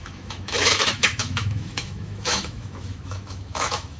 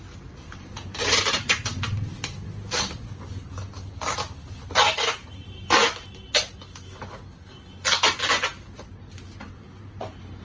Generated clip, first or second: first